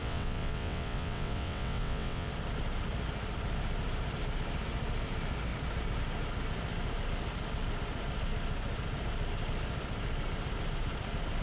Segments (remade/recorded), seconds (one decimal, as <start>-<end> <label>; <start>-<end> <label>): 0.0-2.3 remade; 2.3-11.4 recorded